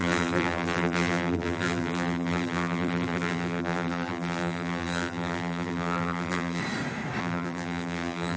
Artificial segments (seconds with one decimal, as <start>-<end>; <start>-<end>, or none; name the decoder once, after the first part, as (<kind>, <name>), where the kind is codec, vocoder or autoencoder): 0.0-6.6 (vocoder, BigVGAN v2); 7.2-8.4